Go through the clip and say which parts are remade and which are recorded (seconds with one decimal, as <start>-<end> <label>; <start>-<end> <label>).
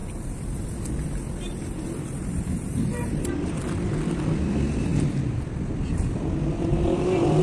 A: 0.0-7.4 recorded